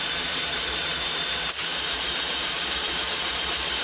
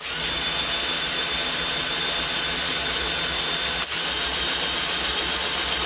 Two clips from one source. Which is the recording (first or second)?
second